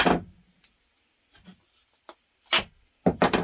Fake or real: real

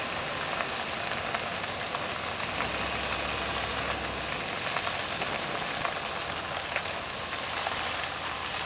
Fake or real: real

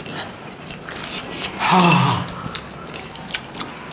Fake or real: real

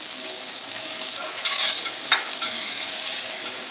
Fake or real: fake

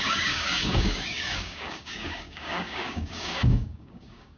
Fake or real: fake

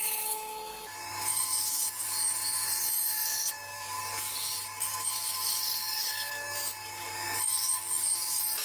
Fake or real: fake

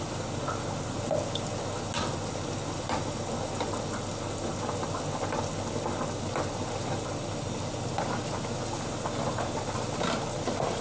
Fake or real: real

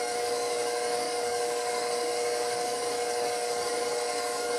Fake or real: fake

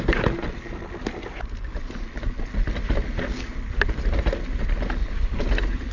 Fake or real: real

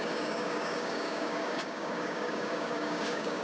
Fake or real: fake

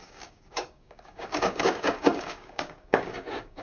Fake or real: fake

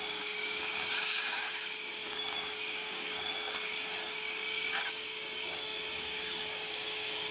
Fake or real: fake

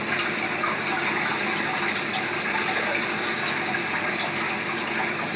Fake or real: real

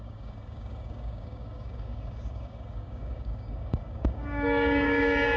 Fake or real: fake